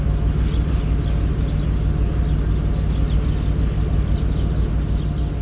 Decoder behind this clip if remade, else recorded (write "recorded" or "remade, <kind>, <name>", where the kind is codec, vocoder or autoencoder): recorded